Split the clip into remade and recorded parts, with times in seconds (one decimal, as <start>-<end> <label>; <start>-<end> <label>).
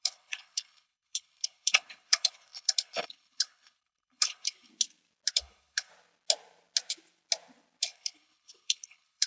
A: 0.0-4.7 remade; 4.7-5.3 recorded; 5.3-5.9 remade; 5.9-7.8 recorded; 7.8-9.3 remade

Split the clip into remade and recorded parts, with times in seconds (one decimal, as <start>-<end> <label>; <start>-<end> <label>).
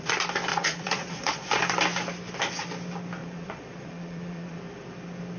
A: 0.0-0.5 recorded; 0.5-1.6 remade; 1.6-3.2 recorded; 3.2-4.6 remade; 4.6-5.4 recorded